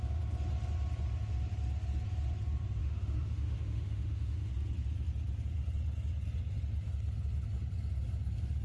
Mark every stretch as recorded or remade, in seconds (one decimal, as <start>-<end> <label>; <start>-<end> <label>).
0.0-2.8 recorded; 2.8-4.5 remade; 4.5-8.6 recorded